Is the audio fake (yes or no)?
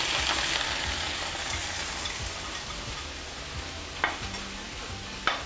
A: no